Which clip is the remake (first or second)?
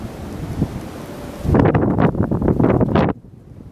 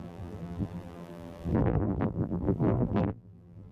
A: second